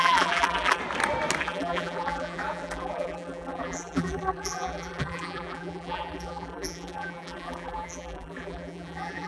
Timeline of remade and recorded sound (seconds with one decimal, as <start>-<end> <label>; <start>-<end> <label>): 0.0-0.8 remade; 0.8-1.4 recorded; 1.4-9.3 remade